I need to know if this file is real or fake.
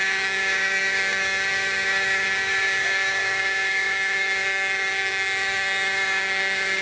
fake